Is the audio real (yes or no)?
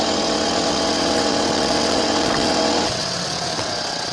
no